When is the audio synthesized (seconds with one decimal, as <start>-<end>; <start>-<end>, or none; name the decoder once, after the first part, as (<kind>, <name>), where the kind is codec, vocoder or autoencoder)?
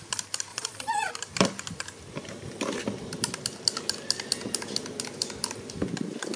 0.5-1.1 (vocoder, Vocos)